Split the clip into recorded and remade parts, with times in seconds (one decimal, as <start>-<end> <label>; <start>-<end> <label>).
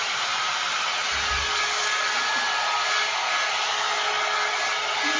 0.0-5.2 recorded